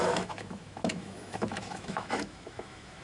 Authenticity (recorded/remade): remade